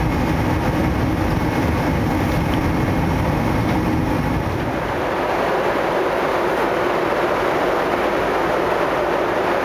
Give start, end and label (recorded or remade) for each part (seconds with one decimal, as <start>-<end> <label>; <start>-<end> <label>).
0.0-9.6 recorded